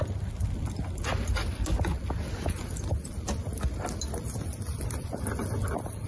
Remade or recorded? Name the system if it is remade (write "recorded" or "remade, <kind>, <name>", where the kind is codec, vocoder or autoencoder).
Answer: recorded